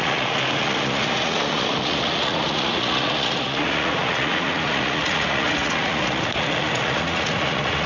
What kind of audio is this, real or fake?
fake